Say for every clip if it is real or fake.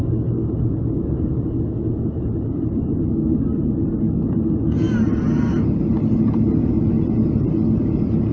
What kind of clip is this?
real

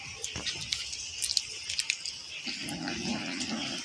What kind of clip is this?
real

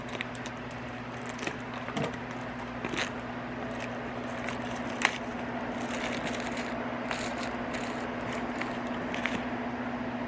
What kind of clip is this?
fake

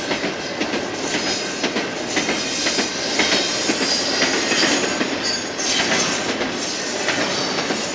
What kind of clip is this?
real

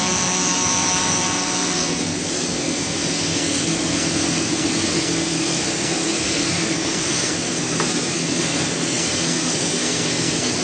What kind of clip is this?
fake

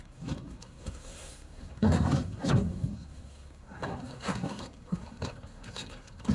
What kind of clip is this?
fake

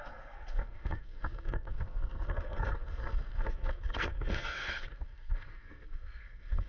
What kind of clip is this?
fake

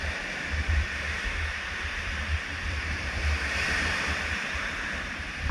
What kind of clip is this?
fake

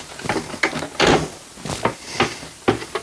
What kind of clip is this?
real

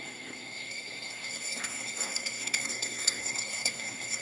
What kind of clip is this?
fake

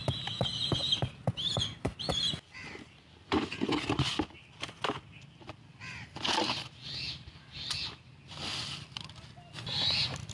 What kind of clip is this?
real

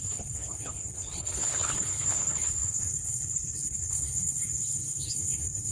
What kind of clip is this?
fake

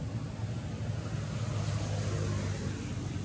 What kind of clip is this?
real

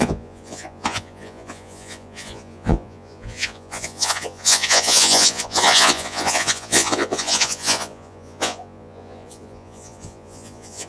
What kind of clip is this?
fake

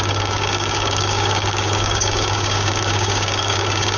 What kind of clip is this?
fake